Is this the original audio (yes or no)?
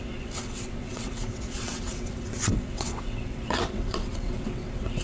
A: no